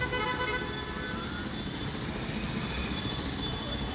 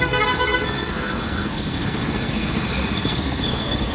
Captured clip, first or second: first